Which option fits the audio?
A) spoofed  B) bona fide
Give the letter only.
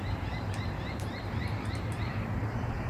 A